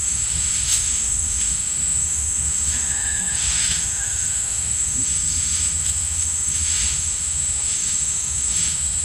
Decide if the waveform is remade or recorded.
remade